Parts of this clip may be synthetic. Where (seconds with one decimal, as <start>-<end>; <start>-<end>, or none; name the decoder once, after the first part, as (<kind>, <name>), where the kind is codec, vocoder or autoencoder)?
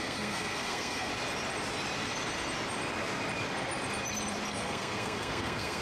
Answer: 0.0-1.1 (codec, SNAC); 4.5-5.8